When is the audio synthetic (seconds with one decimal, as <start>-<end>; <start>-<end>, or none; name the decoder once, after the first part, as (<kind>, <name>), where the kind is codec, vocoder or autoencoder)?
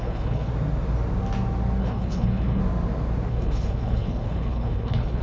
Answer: 0.0-0.5 (codec, HILCodec); 1.8-2.6; 3.3-5.2